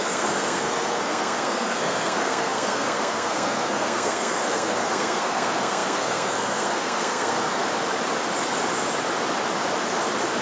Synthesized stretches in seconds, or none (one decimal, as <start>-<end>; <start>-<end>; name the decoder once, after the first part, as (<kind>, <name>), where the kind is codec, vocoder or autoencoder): 0.0-7.6 (codec, SNAC)